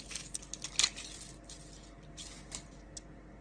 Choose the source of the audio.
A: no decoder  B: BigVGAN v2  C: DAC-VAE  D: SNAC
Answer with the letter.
A